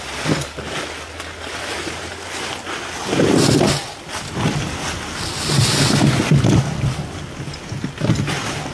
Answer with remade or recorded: recorded